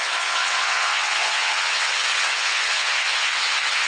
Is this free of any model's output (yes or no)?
no